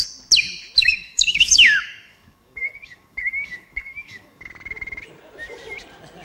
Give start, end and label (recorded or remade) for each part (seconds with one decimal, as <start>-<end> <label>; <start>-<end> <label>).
0.0-0.8 recorded; 0.8-4.5 remade; 4.5-6.2 recorded